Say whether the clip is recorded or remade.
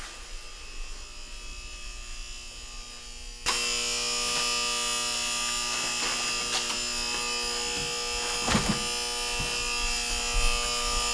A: recorded